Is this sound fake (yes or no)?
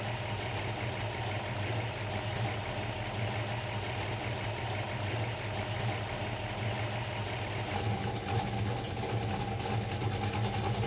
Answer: no